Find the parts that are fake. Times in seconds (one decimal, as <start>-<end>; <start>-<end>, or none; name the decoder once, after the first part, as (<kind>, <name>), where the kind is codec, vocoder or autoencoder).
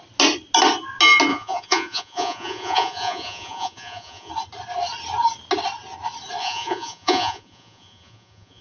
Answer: 1.3-4.3 (vocoder, Vocos); 6.4-8.6